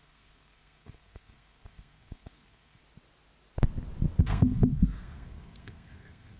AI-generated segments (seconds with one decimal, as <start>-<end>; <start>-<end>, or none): 0.0-2.8; 4.2-6.4